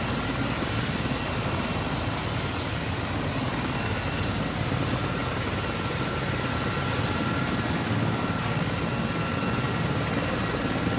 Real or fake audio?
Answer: real